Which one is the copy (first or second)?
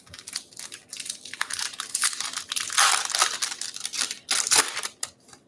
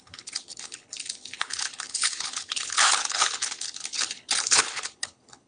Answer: second